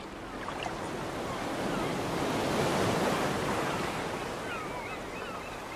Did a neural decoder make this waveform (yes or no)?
no